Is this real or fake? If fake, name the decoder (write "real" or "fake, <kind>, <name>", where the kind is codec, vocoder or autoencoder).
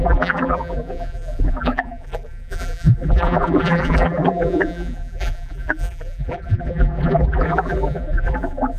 fake, vocoder, BigVGAN v2